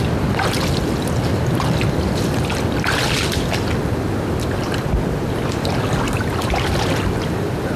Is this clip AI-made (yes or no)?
no